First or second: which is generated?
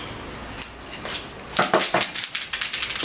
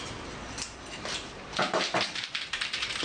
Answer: second